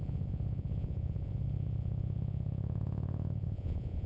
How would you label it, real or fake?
fake